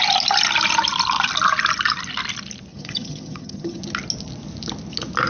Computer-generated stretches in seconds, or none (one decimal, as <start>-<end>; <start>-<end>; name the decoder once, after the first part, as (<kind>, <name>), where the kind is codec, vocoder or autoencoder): 2.7-3.8 (vocoder, HiFi-GAN)